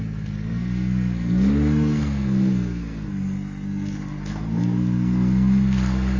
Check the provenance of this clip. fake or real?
fake